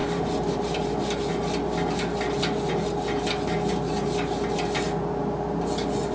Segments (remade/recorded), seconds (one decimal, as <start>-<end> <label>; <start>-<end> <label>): 0.0-6.1 recorded